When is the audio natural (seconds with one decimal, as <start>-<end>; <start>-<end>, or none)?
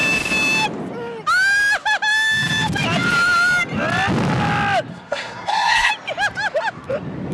0.0-4.9; 5.9-7.3